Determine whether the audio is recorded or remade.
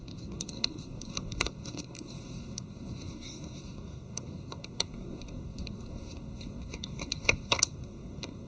remade